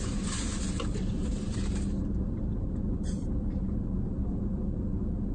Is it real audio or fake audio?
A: fake